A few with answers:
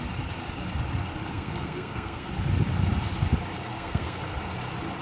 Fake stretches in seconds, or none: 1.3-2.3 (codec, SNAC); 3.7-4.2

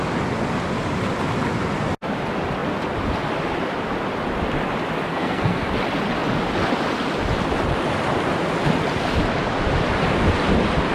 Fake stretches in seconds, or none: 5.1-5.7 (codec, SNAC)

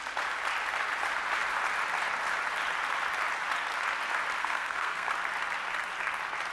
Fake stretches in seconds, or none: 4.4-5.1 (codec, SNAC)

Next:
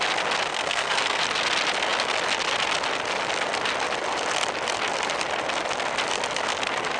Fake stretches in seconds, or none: 0.5-1.2 (codec, SNAC)